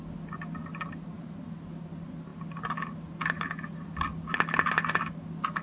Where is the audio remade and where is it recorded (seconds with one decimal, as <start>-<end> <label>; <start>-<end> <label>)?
0.0-5.6 recorded